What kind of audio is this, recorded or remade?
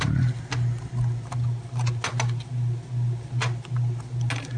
recorded